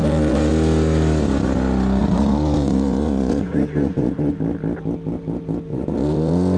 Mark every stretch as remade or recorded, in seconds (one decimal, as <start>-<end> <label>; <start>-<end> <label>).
0.0-0.5 remade; 0.5-2.0 recorded; 2.0-4.3 remade; 4.3-5.7 recorded; 5.7-6.6 remade